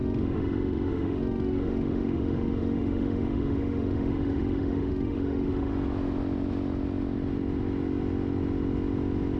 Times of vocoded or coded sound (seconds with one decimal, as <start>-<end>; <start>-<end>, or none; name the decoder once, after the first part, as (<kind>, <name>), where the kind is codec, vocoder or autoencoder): 0.0-5.7 (autoencoder, DAC-VAE)